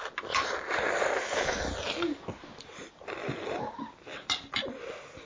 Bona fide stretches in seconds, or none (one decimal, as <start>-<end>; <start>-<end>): 0.0-5.3